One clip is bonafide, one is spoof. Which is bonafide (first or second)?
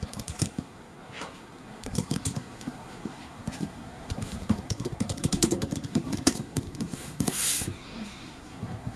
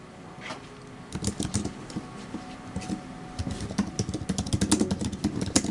second